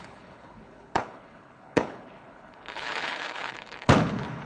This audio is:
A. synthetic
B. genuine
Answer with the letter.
A